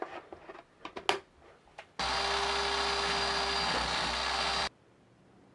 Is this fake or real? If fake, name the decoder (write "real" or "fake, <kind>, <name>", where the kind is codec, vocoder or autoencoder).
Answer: real